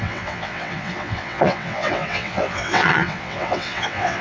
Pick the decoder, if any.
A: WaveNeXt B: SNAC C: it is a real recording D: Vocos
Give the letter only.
A